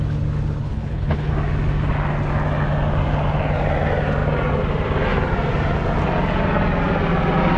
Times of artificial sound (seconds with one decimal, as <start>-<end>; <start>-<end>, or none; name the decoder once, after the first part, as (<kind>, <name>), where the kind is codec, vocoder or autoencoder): 0.6-1.3 (codec, HILCodec)